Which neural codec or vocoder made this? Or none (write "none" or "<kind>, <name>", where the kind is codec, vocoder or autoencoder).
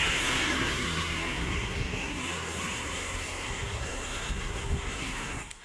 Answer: codec, SNAC